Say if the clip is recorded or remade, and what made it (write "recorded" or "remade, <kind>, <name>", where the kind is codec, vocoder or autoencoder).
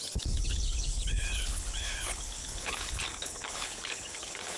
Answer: remade, codec, HILCodec